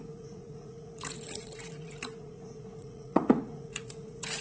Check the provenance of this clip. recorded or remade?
remade